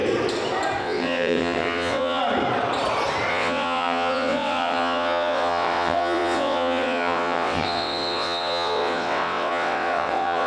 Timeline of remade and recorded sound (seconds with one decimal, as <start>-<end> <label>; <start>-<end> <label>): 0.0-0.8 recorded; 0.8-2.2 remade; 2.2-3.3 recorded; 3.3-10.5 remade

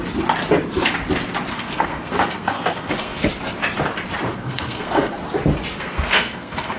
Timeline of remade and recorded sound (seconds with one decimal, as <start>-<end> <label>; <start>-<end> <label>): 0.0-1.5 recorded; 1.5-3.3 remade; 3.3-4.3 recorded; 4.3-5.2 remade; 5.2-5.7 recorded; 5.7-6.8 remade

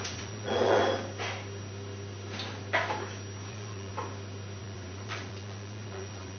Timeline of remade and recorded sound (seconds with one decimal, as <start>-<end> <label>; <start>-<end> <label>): 0.0-0.8 remade; 0.8-3.5 recorded; 3.5-3.9 remade; 3.9-4.6 recorded; 4.6-6.4 remade

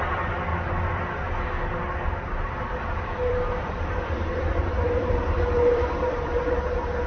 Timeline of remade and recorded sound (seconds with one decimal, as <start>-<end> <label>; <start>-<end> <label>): 0.0-0.5 recorded; 0.5-1.1 remade; 1.1-2.3 recorded; 2.3-6.2 remade; 6.2-7.1 recorded